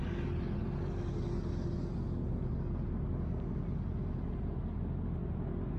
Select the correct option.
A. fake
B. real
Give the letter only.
B